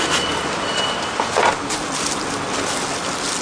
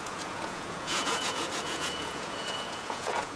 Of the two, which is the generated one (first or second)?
second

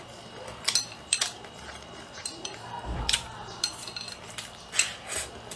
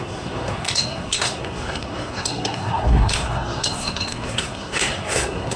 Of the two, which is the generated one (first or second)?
second